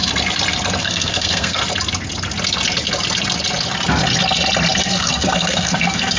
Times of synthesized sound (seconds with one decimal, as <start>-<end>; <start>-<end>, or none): 0.8-1.6; 4.8-6.2